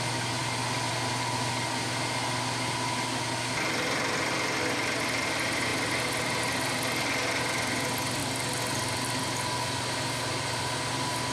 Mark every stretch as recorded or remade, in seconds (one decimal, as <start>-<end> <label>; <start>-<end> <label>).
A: 0.0-11.3 recorded